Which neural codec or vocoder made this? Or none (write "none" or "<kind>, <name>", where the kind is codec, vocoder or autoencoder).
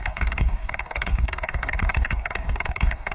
codec, DAC